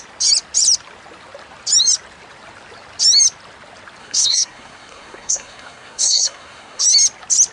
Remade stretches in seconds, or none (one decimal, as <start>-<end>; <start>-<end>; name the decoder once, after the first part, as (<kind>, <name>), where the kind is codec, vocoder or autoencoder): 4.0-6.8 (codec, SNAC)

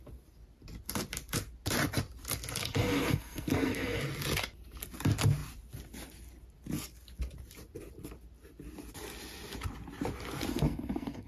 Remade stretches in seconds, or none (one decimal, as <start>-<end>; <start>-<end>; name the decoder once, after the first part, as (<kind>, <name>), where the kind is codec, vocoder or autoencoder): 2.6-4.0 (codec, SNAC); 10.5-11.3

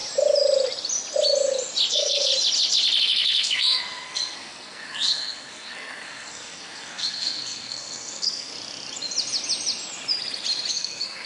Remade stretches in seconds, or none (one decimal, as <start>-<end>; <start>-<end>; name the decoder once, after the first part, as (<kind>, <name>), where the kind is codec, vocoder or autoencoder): 1.9-2.3 (codec, SNAC); 3.0-8.5; 10.7-11.3